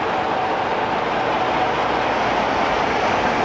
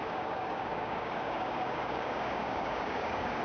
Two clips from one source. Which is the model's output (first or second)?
second